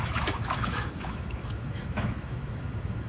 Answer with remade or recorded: remade